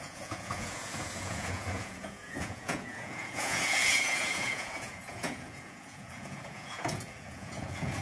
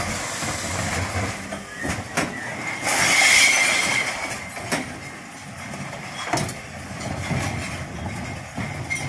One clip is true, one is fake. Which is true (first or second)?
second